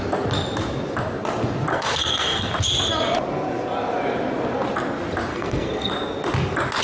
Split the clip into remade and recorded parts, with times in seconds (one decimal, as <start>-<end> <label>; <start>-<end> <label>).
0.0-1.7 recorded; 1.7-2.5 remade; 2.5-5.3 recorded; 5.3-5.9 remade; 5.9-6.8 recorded